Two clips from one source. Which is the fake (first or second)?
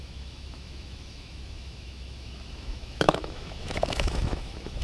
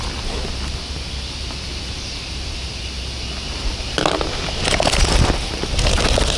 first